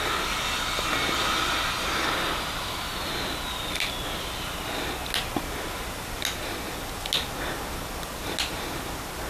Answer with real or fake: real